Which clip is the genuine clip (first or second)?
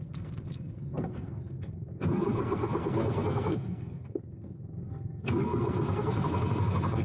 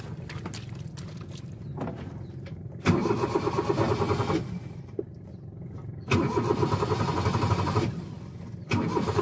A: second